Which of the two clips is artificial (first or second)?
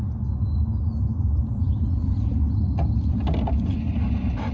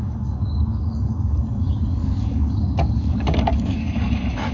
second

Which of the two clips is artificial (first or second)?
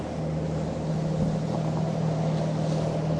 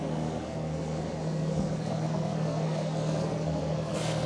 second